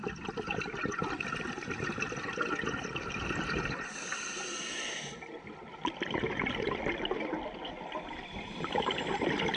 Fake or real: real